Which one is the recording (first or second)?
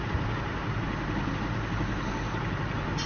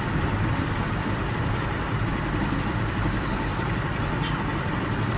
first